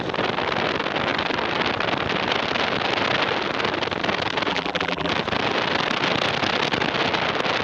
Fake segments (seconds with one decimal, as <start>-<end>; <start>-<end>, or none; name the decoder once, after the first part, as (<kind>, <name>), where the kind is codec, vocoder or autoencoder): 4.5-5.1 (vocoder, BigVGAN v2)